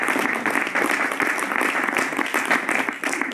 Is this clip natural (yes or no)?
yes